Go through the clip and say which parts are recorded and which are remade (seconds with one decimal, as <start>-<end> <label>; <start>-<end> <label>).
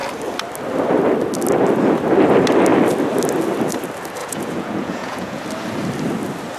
0.0-4.2 recorded; 4.2-5.4 remade; 5.4-6.6 recorded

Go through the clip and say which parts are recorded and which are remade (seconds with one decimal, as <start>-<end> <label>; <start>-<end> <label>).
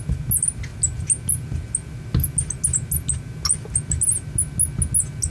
0.0-5.3 recorded